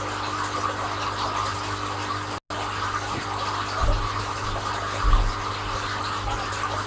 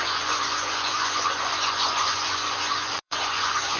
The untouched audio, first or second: first